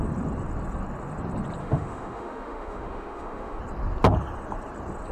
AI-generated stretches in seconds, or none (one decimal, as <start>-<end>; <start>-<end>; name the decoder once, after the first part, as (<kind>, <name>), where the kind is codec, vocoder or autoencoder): 1.6-3.6 (autoencoder, DAC-VAE)